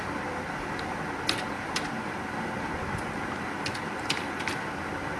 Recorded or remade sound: recorded